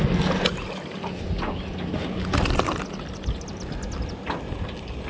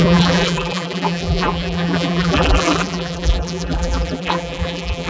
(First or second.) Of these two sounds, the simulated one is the second